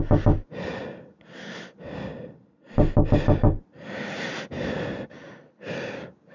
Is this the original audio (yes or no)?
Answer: yes